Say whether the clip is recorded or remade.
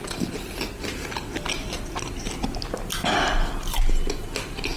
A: recorded